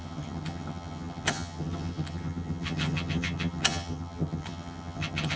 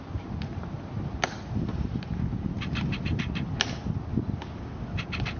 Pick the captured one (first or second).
second